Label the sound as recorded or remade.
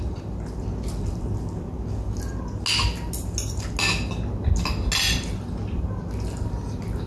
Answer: recorded